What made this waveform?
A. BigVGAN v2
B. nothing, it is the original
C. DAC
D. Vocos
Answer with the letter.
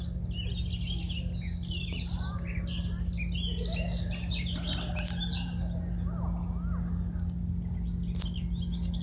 B